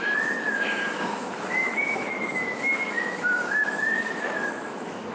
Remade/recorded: remade